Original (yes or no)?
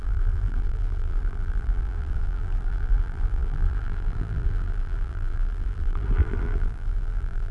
no